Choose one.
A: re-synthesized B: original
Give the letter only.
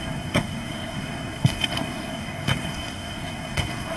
A